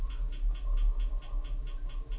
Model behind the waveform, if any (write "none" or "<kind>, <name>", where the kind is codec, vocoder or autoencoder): none